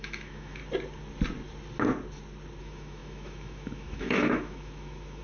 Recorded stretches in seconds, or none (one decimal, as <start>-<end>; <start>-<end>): 0.6-2.6